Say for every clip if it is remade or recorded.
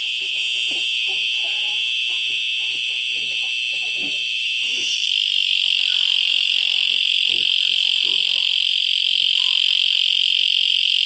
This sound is remade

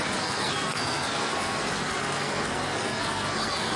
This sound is remade